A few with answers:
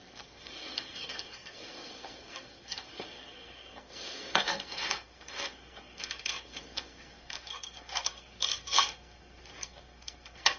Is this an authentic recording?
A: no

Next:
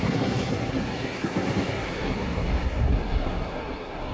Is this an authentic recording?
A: no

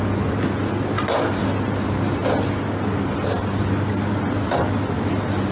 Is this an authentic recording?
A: yes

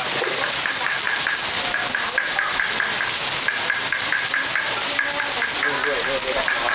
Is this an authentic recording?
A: yes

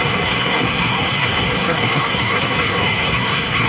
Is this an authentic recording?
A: no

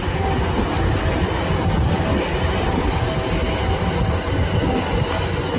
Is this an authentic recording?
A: yes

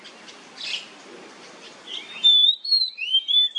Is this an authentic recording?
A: yes